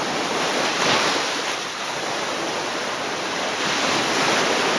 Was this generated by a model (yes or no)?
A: no